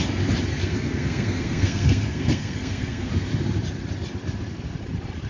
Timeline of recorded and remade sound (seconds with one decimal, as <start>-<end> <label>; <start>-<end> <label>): 0.0-0.6 recorded; 0.6-3.1 remade; 3.1-5.3 recorded